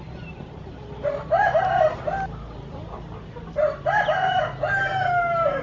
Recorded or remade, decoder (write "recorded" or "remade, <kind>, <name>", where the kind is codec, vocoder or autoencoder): recorded